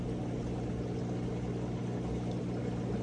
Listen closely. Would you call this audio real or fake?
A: real